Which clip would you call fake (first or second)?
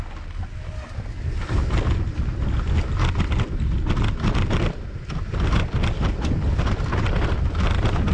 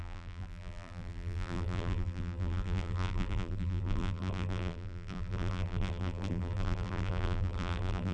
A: second